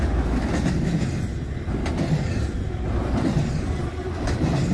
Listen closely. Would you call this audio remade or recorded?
recorded